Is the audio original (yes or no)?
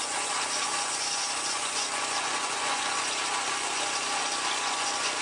no